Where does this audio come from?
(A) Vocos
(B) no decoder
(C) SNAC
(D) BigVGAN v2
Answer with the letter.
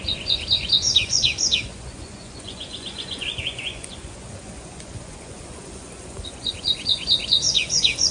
A